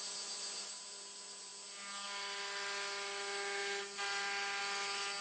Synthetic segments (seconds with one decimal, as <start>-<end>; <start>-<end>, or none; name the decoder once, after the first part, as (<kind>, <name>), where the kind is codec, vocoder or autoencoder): none